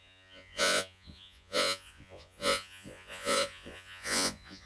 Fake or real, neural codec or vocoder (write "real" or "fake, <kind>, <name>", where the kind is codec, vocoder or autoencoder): fake, vocoder, Vocos